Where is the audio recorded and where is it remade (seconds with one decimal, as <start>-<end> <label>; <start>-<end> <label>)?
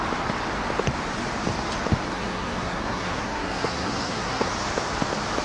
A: 0.0-2.1 recorded; 2.1-4.5 remade; 4.5-5.4 recorded